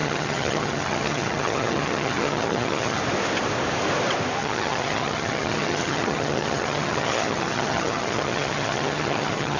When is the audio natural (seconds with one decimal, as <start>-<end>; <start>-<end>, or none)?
3.0-4.4